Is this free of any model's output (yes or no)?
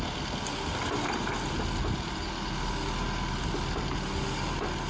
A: yes